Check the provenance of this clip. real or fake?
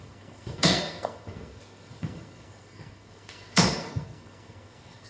fake